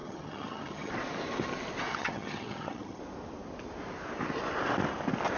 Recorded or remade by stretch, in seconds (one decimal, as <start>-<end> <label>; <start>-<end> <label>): 0.0-0.9 remade; 0.9-1.9 recorded; 1.9-3.0 remade; 3.0-5.4 recorded